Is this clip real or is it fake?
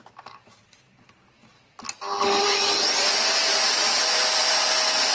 real